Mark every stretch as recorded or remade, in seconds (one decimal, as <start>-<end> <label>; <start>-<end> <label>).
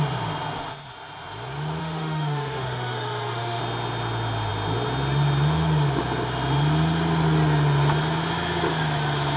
0.0-1.8 recorded; 1.8-3.6 remade; 3.6-9.4 recorded